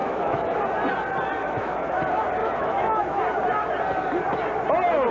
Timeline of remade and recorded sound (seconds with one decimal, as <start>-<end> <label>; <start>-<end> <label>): 0.0-0.6 remade; 0.6-1.4 recorded; 1.4-2.0 remade; 2.0-2.4 recorded; 2.4-3.2 remade; 3.2-5.1 recorded